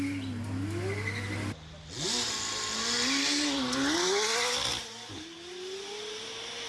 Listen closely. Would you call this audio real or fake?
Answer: real